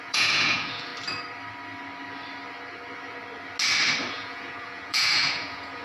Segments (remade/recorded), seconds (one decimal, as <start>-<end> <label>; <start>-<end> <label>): 0.0-0.9 remade; 0.9-4.1 recorded; 4.1-5.8 remade

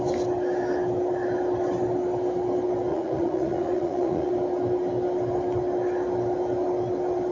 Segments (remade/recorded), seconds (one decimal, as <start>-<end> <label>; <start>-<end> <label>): 0.0-2.9 recorded; 2.9-4.3 remade; 4.3-7.3 recorded

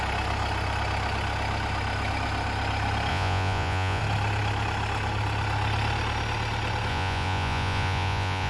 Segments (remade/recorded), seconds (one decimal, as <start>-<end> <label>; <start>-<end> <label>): 0.0-3.1 recorded; 3.1-4.0 remade; 4.0-6.9 recorded; 6.9-8.5 remade